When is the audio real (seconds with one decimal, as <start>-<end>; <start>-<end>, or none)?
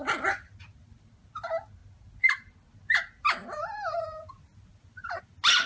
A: 0.0-5.7